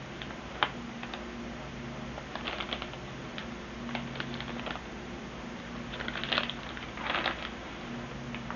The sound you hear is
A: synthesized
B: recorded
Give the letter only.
B